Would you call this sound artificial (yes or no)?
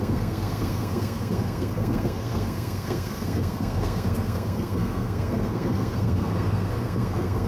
yes